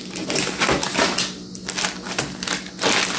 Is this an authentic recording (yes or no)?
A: yes